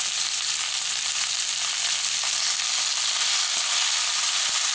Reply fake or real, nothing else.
real